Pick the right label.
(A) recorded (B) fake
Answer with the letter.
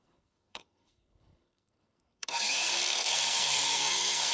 B